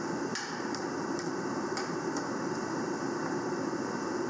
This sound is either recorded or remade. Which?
remade